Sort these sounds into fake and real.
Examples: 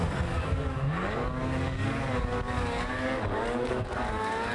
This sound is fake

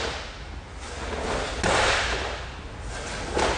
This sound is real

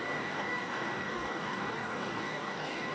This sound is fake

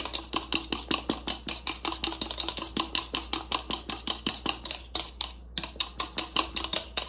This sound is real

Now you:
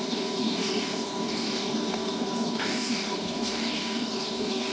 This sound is fake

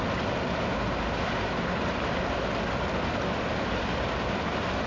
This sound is real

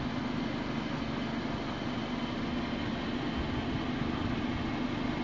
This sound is real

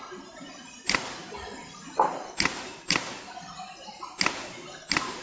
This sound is real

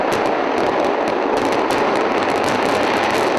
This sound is real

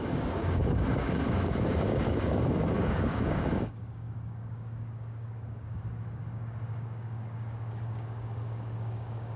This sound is fake